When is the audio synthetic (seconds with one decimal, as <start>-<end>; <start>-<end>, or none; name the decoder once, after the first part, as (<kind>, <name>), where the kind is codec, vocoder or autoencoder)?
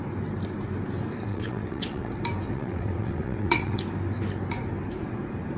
1.3-2.1 (vocoder, WaveNeXt); 2.5-3.8